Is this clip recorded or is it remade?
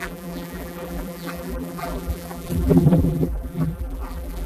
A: remade